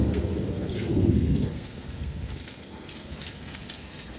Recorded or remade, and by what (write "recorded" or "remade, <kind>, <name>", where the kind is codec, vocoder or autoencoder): remade, codec, SNAC